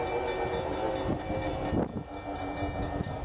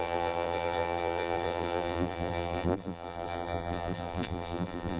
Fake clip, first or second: second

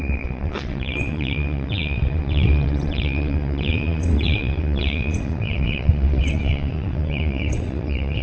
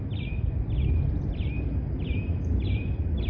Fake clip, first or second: first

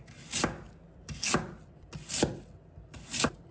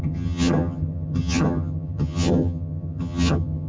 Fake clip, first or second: second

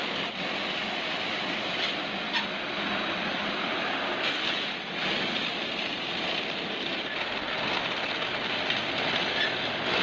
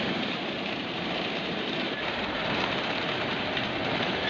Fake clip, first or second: second